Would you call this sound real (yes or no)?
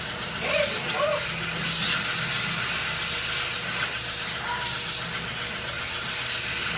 yes